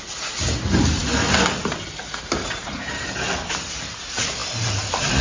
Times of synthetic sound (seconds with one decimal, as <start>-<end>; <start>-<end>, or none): 0.0-5.2